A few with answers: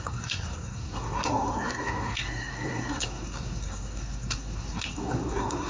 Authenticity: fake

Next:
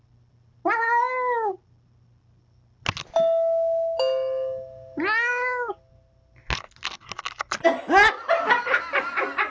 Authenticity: real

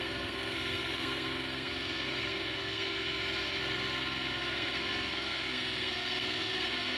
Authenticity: fake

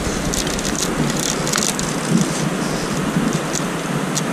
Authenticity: real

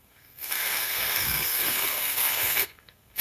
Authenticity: fake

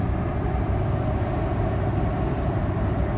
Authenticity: real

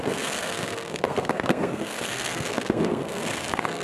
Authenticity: fake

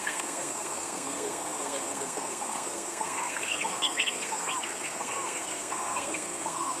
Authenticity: fake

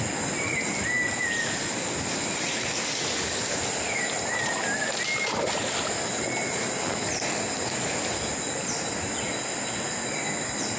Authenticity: real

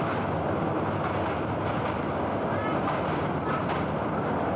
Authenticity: real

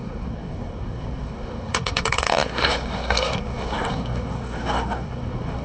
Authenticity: fake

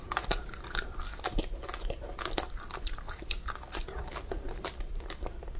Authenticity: real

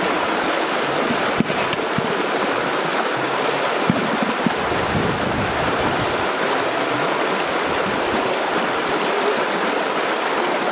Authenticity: real